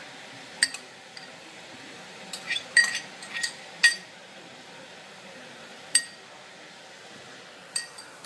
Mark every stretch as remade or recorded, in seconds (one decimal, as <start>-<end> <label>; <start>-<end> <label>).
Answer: 0.0-1.3 recorded; 1.3-2.8 remade; 2.8-3.8 recorded; 3.8-6.0 remade; 6.0-8.3 recorded